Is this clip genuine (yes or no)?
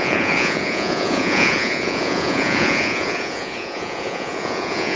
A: no